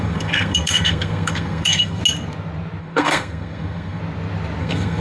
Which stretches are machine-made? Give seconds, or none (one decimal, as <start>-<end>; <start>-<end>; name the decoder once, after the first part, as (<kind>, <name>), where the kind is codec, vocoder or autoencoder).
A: 0.0-2.0 (codec, SNAC); 2.8-4.0; 4.6-5.0